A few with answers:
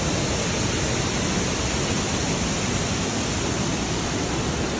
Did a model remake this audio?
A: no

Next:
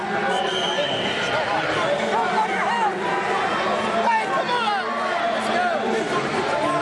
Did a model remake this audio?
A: no